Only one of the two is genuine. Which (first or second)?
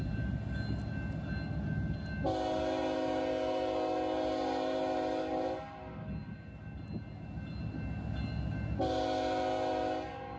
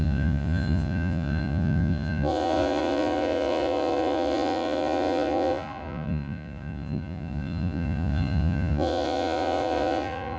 first